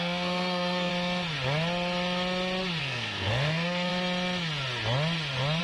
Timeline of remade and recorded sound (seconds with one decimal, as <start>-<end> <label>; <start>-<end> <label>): 0.0-0.9 remade; 0.9-2.8 recorded; 2.8-3.9 remade; 3.9-5.6 recorded